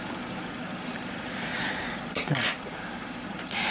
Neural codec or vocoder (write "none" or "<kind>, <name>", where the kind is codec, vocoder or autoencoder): vocoder, BigVGAN v2